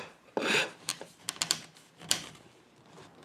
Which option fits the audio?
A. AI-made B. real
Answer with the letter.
A